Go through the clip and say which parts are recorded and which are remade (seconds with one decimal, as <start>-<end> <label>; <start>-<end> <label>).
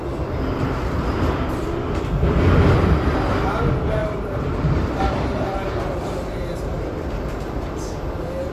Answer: 0.0-4.0 recorded; 4.0-7.8 remade; 7.8-8.5 recorded